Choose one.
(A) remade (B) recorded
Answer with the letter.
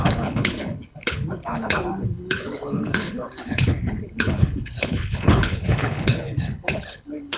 A